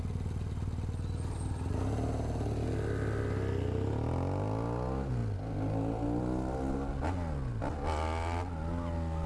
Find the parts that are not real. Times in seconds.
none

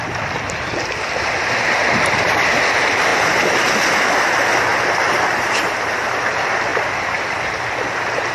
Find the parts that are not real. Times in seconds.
3.1-3.9 (vocoder, BigVGAN v2); 4.7-5.6

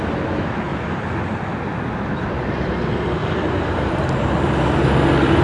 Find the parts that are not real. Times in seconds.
0.7-1.2 (vocoder, BigVGAN v2); 3.2-3.9

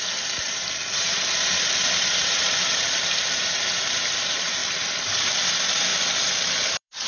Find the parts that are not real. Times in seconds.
0.0-1.1 (vocoder, BigVGAN v2); 2.1-4.6; 5.5-5.9; 6.6-7.1